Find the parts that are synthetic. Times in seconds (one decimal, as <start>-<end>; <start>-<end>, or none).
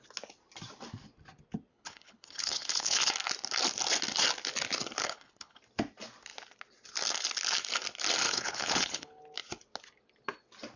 1.7-3.1; 5.0-5.6; 8.2-9.2